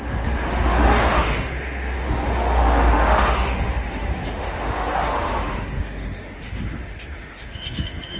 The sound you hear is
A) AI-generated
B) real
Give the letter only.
A